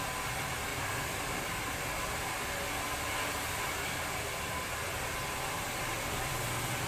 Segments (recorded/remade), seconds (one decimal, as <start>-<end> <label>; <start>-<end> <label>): 0.0-6.9 recorded